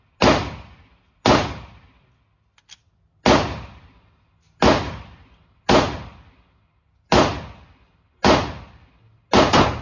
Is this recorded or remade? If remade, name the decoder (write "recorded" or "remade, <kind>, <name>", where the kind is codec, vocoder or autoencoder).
recorded